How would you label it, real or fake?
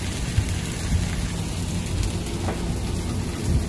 real